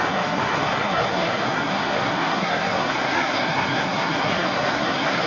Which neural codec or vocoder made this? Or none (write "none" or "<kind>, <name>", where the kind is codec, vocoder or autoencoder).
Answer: codec, SNAC